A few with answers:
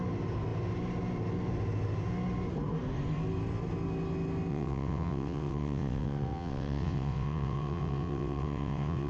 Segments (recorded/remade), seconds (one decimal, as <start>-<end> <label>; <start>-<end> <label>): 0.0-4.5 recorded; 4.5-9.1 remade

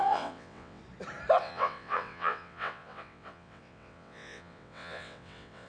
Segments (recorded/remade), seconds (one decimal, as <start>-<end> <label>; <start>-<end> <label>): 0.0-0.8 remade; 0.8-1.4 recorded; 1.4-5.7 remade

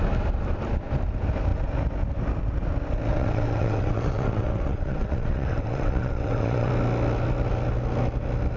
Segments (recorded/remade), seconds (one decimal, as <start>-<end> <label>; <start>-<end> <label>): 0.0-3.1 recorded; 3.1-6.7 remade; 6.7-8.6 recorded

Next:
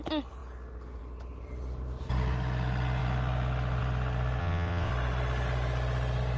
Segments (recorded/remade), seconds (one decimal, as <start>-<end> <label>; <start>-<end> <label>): 0.0-4.4 recorded; 4.4-4.9 remade; 4.9-6.4 recorded

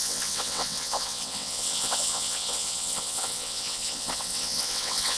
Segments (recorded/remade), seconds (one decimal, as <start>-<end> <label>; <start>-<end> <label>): 0.0-5.2 remade

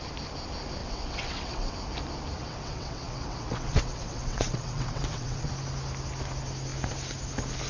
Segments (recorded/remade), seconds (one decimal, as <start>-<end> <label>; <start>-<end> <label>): 0.0-0.8 recorded; 0.8-1.7 remade; 1.7-2.4 recorded; 2.4-5.5 remade; 5.5-7.7 recorded

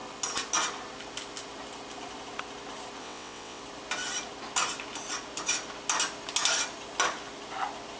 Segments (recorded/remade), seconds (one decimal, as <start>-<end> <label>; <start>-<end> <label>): 0.0-3.0 recorded; 3.0-3.6 remade; 3.6-8.0 recorded

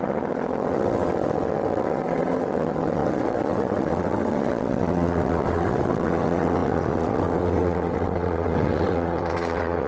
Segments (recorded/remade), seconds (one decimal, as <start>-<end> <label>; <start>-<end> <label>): 0.0-9.9 remade